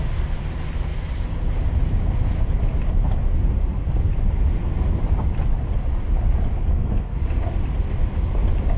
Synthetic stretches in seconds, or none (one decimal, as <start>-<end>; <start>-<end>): 6.7-7.2